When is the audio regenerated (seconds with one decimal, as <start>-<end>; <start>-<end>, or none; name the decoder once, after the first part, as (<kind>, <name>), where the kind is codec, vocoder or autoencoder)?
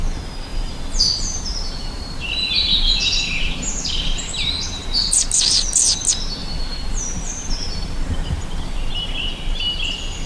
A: 0.5-4.5 (vocoder, BigVGAN v2); 6.4-8.9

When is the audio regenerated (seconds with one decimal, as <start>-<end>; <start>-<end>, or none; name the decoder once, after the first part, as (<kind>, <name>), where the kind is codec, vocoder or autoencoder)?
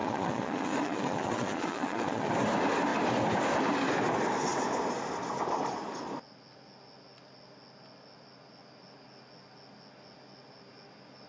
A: 0.0-2.3 (vocoder, Vocos)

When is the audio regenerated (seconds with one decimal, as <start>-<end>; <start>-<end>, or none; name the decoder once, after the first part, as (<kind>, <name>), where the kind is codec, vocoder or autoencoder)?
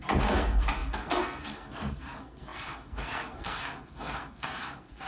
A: 0.0-5.1 (codec, SNAC)